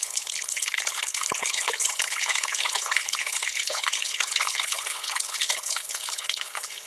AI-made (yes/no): yes